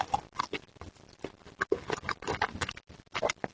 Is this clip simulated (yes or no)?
no